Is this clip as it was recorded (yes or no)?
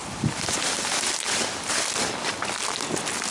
yes